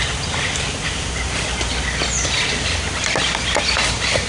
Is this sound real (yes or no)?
yes